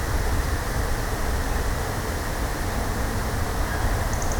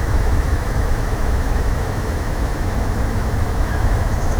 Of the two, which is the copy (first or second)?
second